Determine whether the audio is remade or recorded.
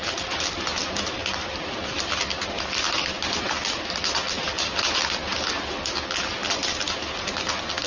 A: recorded